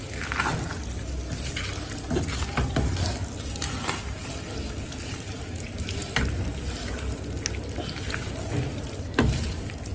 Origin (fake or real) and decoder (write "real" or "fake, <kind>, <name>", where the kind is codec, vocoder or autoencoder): real